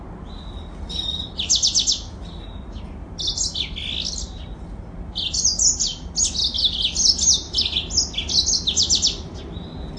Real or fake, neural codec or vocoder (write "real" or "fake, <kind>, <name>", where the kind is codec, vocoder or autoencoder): real